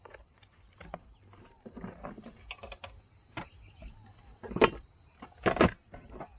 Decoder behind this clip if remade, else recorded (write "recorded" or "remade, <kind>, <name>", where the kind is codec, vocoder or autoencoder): recorded